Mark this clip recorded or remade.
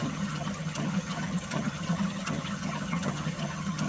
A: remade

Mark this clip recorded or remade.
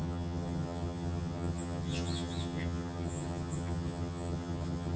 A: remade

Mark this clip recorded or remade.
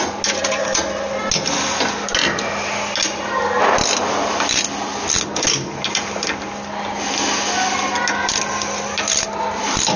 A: recorded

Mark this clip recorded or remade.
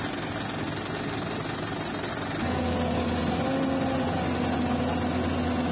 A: recorded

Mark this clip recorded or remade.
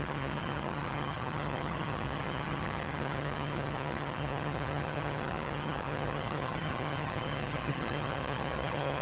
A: remade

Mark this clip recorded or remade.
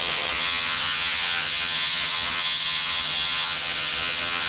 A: remade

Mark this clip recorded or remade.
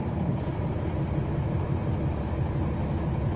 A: recorded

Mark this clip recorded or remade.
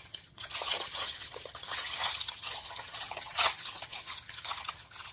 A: remade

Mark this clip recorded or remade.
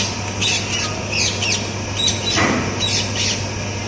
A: recorded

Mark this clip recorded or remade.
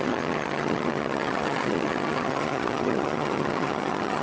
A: remade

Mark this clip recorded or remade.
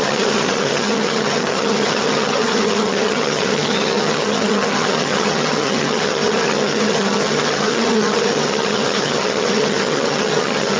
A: remade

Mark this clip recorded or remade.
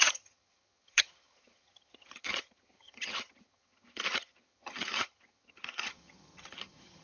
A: remade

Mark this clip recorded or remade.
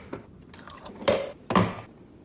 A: recorded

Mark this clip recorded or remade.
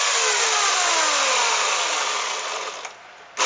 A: recorded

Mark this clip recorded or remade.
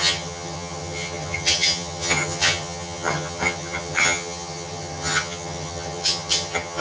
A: remade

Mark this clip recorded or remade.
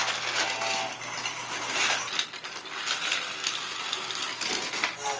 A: recorded